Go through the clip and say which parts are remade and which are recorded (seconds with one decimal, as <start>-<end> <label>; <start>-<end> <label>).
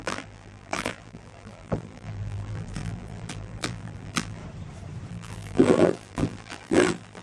0.0-4.4 remade; 4.4-5.1 recorded; 5.1-7.2 remade